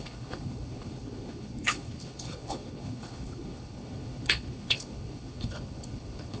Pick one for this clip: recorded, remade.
remade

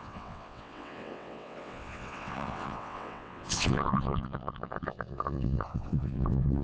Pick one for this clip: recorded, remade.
remade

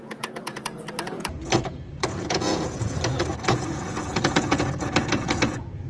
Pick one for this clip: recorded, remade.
remade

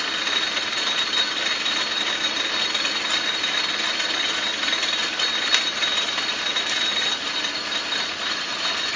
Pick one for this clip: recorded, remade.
recorded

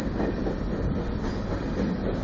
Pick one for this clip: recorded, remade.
recorded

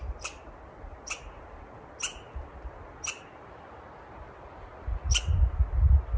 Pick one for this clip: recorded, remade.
recorded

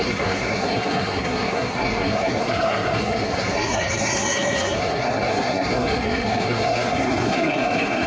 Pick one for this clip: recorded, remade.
remade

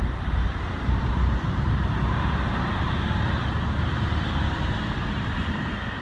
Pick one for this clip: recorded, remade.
remade